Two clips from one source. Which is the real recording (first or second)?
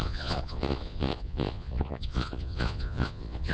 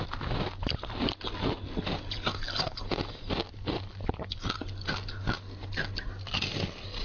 second